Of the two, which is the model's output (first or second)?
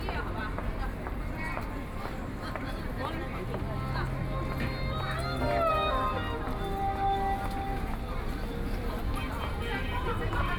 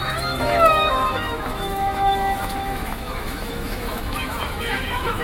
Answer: second